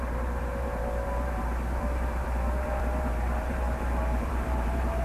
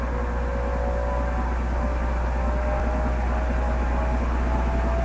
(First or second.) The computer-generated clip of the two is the first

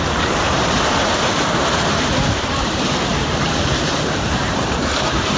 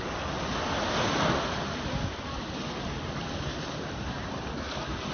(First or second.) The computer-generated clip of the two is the first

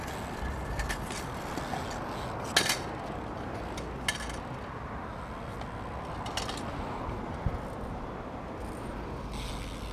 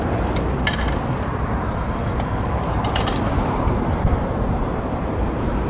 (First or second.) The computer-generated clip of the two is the second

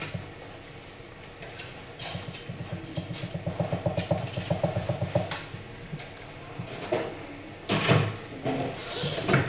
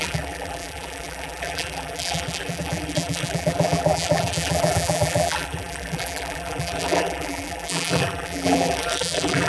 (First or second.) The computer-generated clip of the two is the second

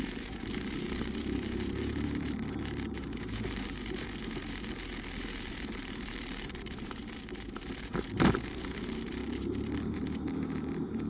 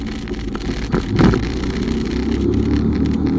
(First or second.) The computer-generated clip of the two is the first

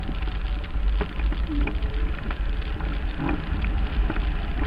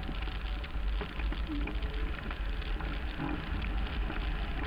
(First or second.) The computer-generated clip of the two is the first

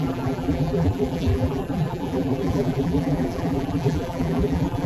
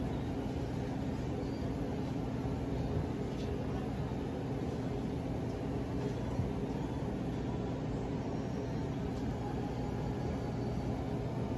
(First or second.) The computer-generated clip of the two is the first